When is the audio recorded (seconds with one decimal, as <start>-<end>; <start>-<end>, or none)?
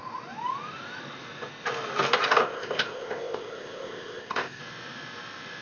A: 0.0-2.4; 4.6-5.6